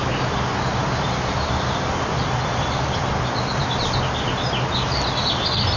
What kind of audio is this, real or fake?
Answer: real